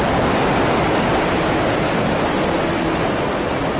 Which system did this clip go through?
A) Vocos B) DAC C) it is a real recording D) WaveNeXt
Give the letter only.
C